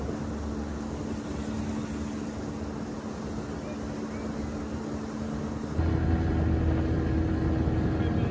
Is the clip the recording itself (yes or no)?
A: yes